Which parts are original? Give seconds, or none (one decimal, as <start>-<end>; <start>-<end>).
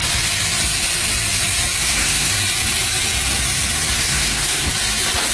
0.0-1.8; 2.3-4.0; 4.7-5.3